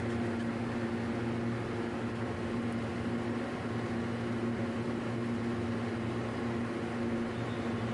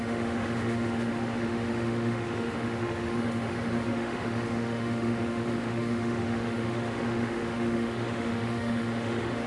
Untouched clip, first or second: first